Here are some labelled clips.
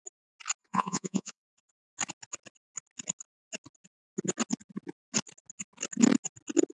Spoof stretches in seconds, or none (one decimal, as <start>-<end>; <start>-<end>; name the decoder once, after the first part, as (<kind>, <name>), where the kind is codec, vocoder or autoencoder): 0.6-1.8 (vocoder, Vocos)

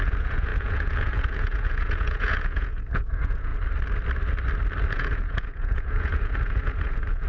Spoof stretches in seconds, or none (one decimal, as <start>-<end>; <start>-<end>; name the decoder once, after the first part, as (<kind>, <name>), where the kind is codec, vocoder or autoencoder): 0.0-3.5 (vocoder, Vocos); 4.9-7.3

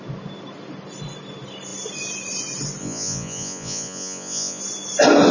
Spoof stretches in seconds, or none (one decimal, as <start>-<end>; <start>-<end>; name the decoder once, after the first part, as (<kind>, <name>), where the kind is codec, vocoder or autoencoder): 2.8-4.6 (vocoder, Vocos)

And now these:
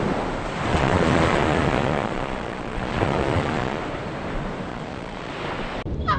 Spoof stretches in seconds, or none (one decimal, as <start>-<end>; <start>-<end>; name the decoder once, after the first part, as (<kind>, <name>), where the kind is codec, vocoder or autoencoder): 0.7-3.8 (vocoder, Vocos); 4.7-5.3